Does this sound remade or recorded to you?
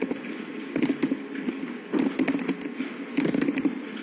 recorded